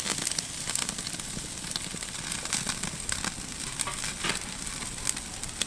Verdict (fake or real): real